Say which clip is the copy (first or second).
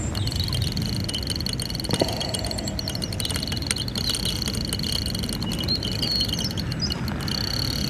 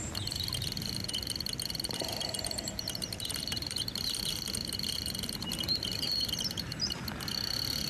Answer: second